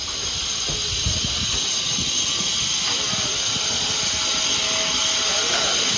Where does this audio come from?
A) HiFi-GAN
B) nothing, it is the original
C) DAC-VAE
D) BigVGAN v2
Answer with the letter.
B